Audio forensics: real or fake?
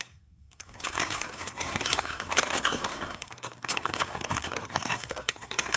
fake